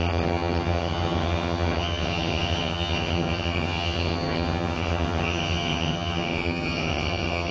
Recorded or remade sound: remade